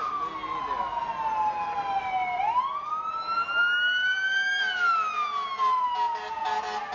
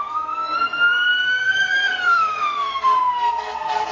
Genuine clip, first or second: first